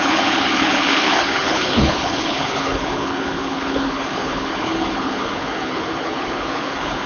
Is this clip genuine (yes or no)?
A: no